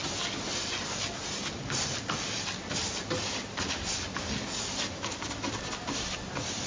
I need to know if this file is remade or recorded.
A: recorded